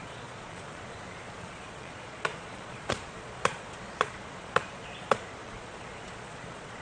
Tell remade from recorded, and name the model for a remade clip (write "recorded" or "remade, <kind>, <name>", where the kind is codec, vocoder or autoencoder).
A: remade, vocoder, Vocos